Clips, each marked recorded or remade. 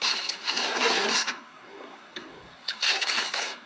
remade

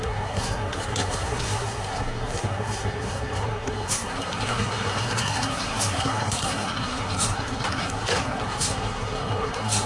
remade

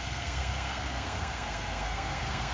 remade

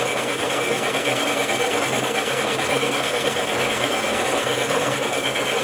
remade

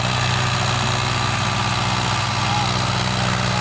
recorded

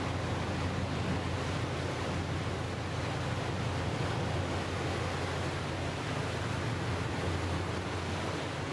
recorded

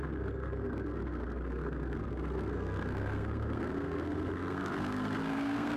remade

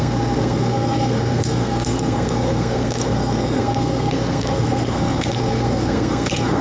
remade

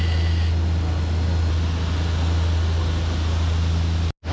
recorded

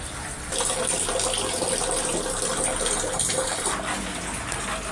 recorded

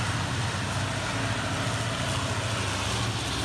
recorded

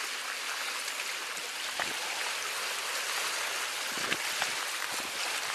recorded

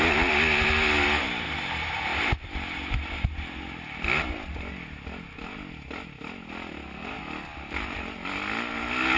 recorded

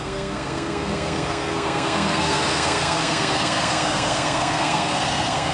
remade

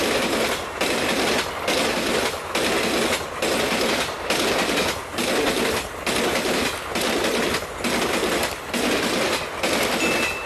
recorded